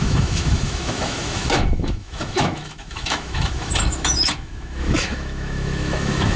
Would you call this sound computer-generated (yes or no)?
yes